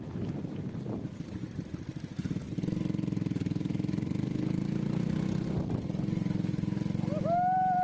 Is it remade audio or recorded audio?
recorded